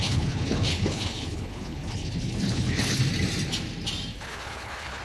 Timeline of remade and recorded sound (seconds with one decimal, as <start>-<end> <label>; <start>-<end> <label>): 0.0-3.0 remade; 3.0-4.1 recorded; 4.1-5.0 remade